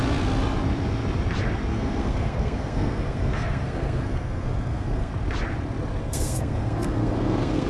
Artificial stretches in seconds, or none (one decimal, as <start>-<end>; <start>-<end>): 1.7-5.1; 6.0-7.7